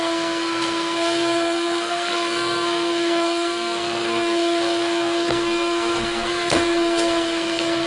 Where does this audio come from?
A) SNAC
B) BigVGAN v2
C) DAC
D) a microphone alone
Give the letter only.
A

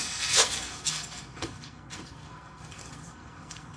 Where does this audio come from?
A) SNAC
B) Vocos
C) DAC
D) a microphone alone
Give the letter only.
A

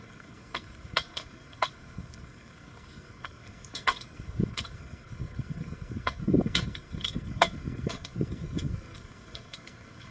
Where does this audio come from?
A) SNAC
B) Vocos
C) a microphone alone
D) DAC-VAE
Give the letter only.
A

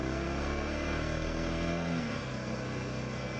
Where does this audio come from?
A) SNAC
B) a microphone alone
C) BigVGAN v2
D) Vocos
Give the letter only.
A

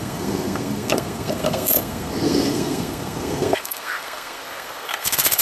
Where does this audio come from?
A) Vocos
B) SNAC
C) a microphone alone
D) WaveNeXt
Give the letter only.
B